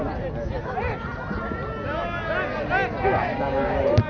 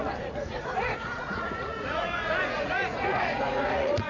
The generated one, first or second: second